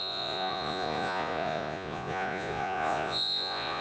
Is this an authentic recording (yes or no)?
no